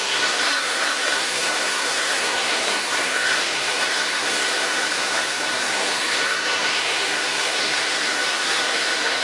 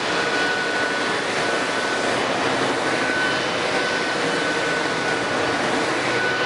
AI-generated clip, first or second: first